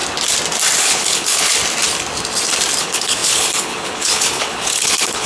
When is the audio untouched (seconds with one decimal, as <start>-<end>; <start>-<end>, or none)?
0.0-0.8; 1.6-2.8